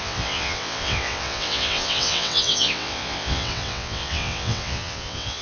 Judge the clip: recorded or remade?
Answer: remade